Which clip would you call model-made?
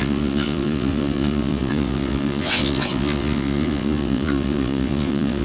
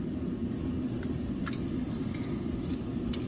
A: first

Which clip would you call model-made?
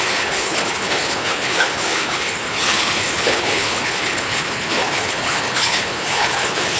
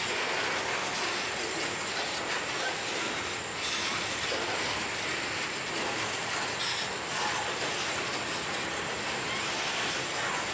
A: first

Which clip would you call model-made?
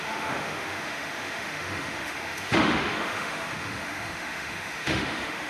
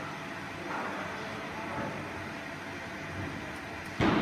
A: first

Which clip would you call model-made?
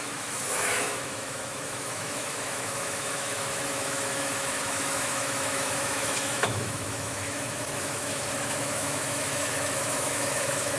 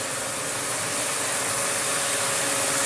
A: first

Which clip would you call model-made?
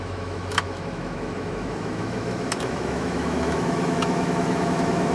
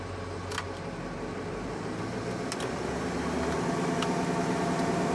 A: first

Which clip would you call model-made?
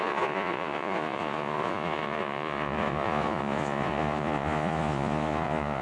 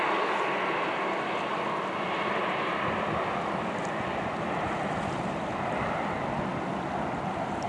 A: first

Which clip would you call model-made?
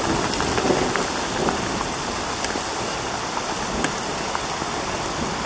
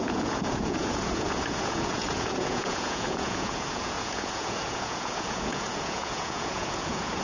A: second